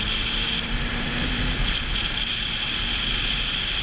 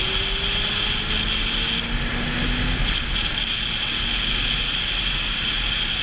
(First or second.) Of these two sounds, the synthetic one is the first